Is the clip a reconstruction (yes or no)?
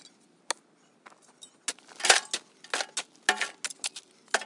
no